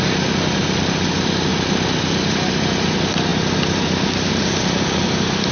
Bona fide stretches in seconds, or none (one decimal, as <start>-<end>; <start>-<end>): 0.0-3.3